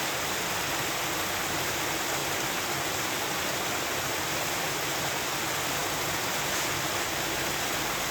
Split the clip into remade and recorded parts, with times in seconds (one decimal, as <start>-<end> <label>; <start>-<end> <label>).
0.0-8.1 recorded